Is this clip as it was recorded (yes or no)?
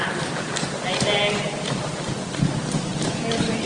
yes